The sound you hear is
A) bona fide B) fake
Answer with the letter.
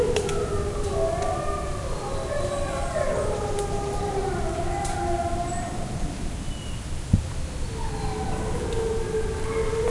A